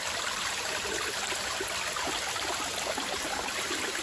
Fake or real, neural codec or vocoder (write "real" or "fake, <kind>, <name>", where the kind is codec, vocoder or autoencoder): real